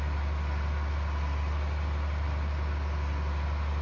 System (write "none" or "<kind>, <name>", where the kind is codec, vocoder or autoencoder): none